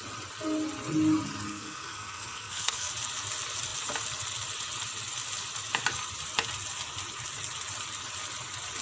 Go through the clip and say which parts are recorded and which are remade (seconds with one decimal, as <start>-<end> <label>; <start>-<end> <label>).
0.0-1.5 recorded; 1.5-2.9 remade; 2.9-8.8 recorded